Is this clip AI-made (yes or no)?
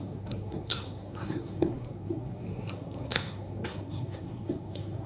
yes